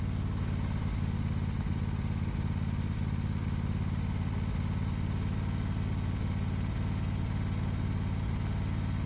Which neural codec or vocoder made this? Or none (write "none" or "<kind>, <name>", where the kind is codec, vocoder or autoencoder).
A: none